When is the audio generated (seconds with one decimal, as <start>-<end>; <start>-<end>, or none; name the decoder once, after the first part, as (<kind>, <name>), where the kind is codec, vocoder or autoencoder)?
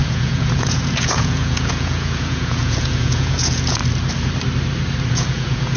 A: 0.0-3.8 (vocoder, Vocos); 5.1-5.8